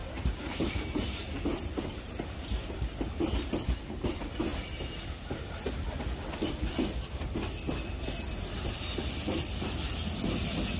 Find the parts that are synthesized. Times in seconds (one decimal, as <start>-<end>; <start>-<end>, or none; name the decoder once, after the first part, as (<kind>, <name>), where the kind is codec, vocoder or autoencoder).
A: 0.0-2.7 (vocoder, BigVGAN v2)